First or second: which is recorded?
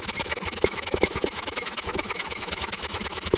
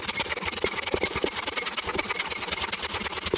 second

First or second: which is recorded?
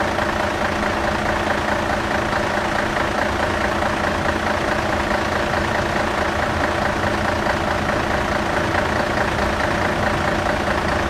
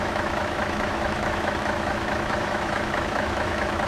first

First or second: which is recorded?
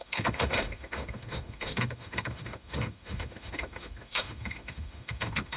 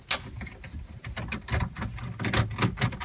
second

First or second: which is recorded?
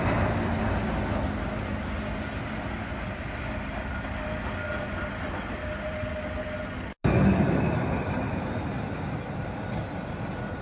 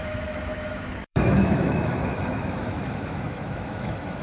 first